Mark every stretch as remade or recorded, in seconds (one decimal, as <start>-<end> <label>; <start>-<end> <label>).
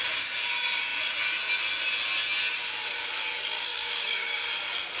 0.0-3.7 recorded; 3.7-4.4 remade; 4.4-5.0 recorded